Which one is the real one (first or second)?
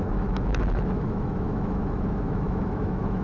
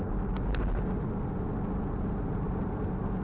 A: second